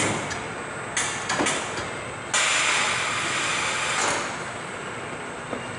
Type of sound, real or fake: real